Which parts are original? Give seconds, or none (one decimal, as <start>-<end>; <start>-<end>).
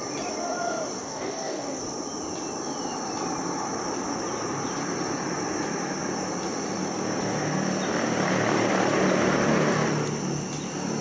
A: 0.0-1.0; 1.8-11.0